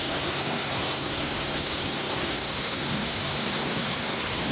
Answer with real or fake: fake